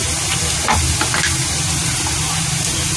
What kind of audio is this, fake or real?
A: real